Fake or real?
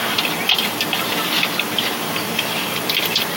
fake